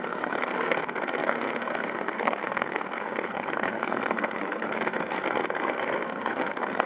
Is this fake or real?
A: fake